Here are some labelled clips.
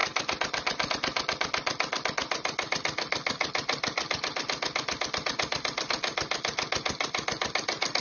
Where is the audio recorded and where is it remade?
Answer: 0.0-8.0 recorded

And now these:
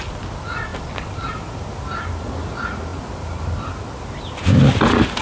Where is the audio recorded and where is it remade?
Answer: 0.0-5.2 recorded

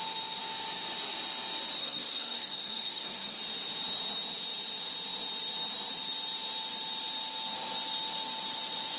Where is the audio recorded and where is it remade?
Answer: 0.0-1.8 recorded; 1.8-3.4 remade; 3.4-9.0 recorded

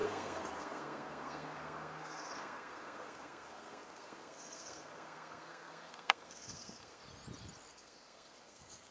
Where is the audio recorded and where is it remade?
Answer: 0.0-7.0 remade; 7.0-7.7 recorded; 7.7-8.9 remade